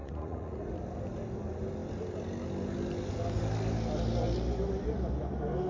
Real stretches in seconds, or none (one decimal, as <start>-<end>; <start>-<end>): 0.6-5.7